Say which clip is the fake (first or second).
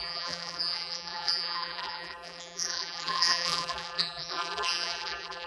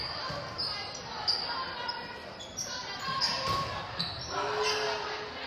first